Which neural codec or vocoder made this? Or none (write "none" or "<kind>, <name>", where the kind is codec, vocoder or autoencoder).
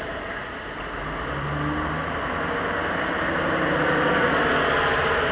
none